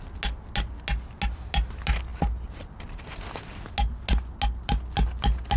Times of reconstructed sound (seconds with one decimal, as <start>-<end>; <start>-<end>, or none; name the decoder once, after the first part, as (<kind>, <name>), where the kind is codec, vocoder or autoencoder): none